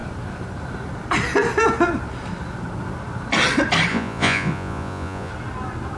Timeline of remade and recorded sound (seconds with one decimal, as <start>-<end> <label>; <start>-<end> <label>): 0.0-3.9 recorded; 3.9-5.3 remade; 5.3-6.0 recorded